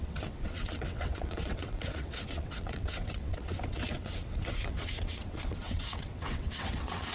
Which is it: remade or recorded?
remade